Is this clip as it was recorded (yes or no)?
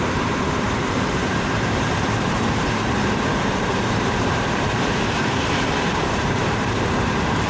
no